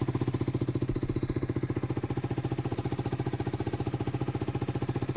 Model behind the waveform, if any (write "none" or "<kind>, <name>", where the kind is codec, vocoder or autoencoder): none